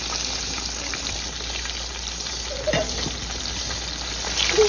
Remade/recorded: recorded